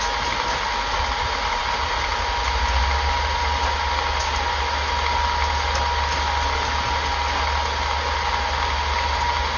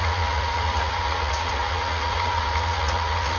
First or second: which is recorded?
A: first